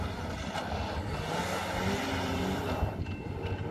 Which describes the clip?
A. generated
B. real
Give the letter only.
B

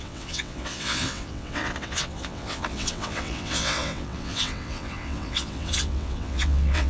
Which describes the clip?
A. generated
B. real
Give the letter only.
A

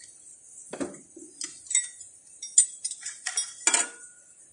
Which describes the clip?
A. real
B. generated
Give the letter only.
A